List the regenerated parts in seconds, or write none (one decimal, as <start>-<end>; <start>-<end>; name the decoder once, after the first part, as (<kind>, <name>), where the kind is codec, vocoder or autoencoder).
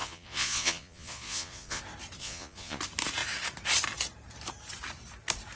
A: 0.0-1.8 (vocoder, Vocos); 2.2-2.8